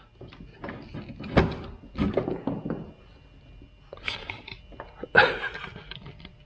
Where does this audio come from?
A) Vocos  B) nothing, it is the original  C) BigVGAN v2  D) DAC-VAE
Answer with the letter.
B